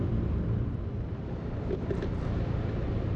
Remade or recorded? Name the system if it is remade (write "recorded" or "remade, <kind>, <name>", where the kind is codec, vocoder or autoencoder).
remade, vocoder, BigVGAN v2